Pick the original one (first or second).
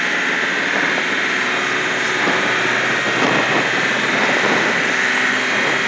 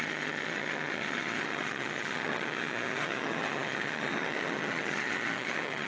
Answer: first